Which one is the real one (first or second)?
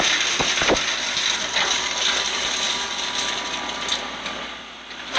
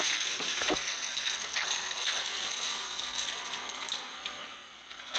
first